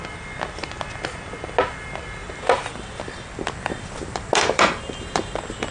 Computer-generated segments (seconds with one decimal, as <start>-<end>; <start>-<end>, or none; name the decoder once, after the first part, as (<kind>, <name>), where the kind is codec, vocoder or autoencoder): 2.2-5.7 (vocoder, BigVGAN v2)

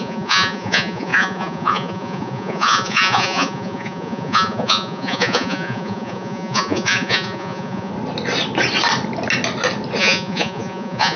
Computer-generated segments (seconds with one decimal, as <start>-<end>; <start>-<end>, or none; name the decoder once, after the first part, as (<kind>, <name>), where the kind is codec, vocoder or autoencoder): 0.0-7.9 (vocoder, Vocos); 10.0-11.2

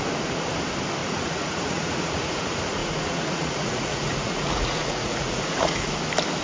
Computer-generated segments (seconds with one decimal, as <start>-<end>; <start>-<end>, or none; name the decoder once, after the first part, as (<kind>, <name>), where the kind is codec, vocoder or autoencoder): 1.0-2.4 (vocoder, Vocos); 2.8-6.0

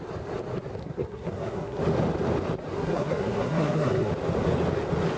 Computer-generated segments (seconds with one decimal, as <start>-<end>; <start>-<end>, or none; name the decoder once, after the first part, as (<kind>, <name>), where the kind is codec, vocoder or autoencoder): 0.8-1.8 (codec, SNAC); 2.8-4.1